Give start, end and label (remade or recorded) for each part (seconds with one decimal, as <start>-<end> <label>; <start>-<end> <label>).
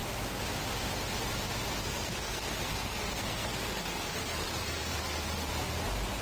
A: 0.0-1.8 recorded; 1.8-5.5 remade; 5.5-6.2 recorded